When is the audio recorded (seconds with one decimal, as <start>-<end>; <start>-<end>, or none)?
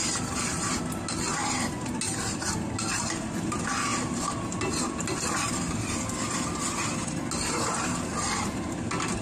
0.0-9.2